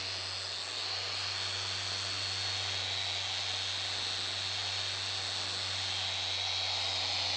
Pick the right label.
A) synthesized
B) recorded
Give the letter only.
B